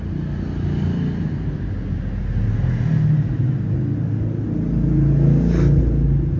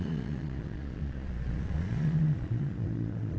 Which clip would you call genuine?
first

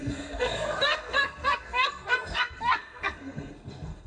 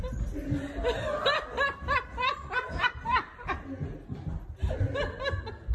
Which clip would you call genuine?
second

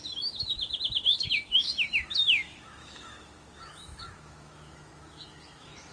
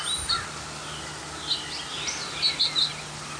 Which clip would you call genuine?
second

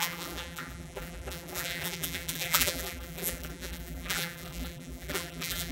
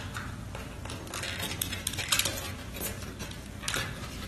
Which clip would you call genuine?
second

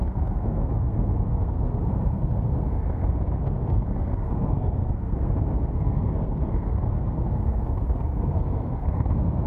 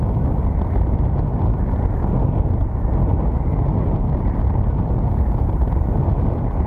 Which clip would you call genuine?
second